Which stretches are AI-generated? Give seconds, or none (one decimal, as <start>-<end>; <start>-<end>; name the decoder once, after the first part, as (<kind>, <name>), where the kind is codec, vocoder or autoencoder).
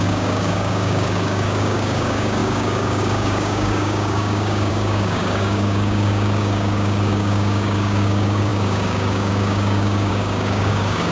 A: 0.0-11.1 (codec, DAC)